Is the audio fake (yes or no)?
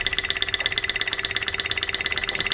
no